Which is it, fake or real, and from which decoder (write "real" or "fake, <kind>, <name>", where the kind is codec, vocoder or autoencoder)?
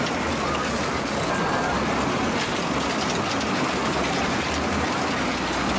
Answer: real